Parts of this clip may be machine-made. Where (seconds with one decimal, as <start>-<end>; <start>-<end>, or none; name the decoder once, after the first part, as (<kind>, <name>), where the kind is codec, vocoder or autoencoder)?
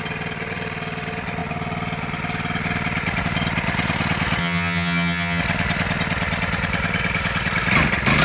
4.4-5.4 (vocoder, HiFi-GAN)